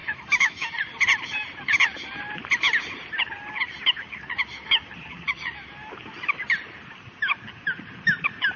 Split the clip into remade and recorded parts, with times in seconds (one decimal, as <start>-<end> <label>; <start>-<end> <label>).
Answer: 0.0-0.7 remade; 0.7-8.6 recorded